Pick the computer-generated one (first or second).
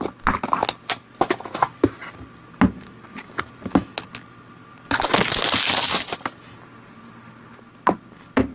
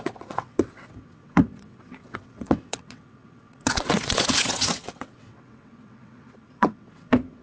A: second